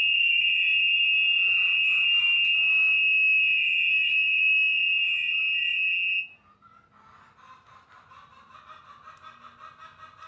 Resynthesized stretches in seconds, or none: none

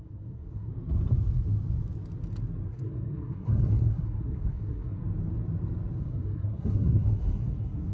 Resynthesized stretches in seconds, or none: 0.0-0.7 (codec, SNAC); 2.7-5.0; 6.0-7.9